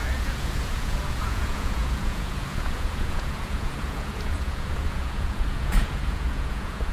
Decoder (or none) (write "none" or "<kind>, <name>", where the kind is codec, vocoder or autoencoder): vocoder, Vocos